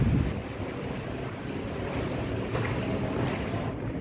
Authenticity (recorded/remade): recorded